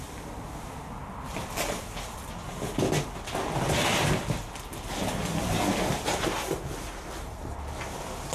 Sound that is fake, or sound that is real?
real